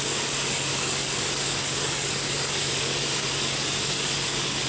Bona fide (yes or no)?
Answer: no